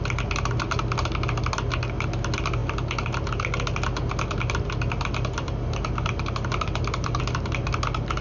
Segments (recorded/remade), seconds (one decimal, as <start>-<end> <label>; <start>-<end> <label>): 0.0-8.2 recorded